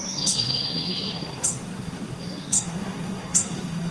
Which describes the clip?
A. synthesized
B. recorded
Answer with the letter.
A